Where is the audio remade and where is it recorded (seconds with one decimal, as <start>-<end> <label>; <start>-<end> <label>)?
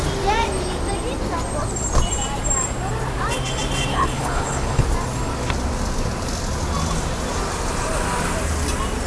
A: 0.0-3.9 recorded; 3.9-4.8 remade; 4.8-9.1 recorded